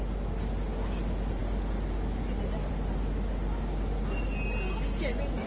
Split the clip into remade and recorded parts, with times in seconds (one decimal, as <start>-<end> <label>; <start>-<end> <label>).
0.0-5.5 recorded